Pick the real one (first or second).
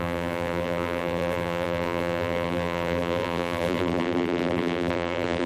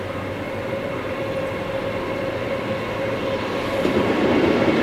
second